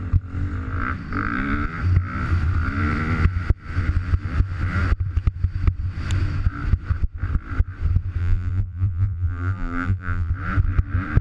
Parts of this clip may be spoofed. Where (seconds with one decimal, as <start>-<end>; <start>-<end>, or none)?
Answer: 8.2-10.3